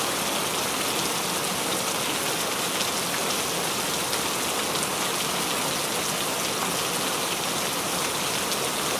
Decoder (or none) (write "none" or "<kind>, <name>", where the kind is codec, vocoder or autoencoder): none